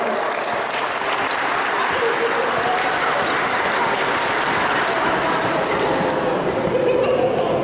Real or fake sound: fake